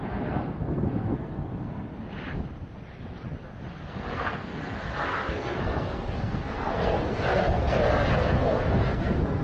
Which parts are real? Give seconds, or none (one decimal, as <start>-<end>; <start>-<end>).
1.9-3.7